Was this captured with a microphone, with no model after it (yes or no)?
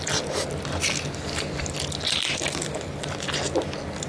yes